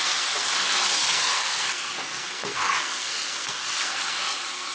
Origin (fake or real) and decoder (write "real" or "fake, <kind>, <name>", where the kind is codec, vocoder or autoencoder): fake, codec, SNAC